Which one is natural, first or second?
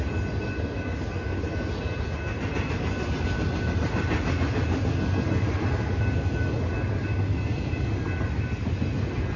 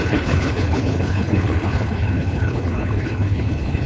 first